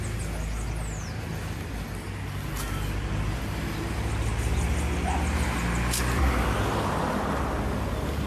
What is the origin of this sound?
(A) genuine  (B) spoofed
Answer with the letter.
A